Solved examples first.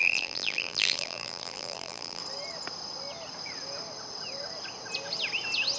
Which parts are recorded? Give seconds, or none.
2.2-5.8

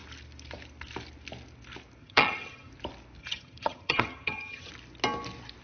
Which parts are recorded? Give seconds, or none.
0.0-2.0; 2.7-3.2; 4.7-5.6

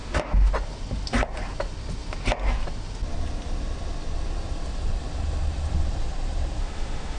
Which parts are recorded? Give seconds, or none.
0.5-6.6

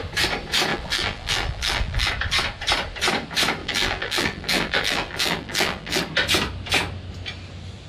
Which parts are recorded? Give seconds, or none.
0.0-0.7; 2.1-3.6; 6.0-7.9

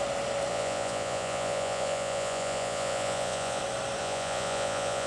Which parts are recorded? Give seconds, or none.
0.0-0.5; 3.6-4.0